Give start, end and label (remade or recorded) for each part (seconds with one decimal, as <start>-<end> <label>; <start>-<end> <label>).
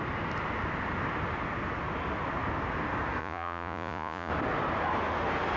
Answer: 0.0-3.2 recorded; 3.2-4.3 remade; 4.3-5.6 recorded